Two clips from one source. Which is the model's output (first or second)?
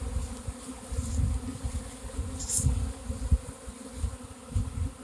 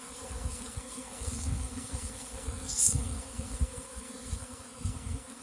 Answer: second